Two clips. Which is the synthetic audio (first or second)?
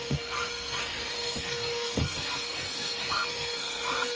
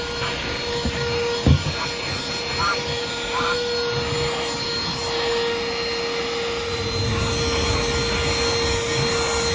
first